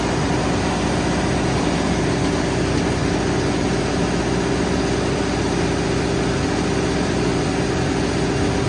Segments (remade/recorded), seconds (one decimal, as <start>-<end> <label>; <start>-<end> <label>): 0.0-8.7 recorded